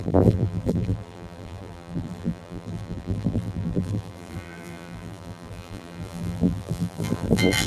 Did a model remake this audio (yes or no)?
yes